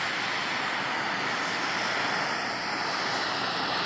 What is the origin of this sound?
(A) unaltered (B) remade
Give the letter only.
A